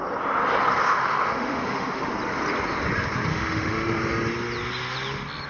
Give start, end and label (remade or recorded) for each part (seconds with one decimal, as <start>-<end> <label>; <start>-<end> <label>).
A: 0.0-0.8 recorded; 0.8-2.1 remade; 2.1-3.3 recorded; 3.3-4.0 remade; 4.0-5.5 recorded